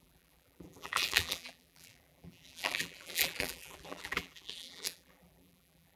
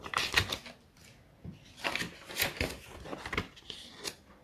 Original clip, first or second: second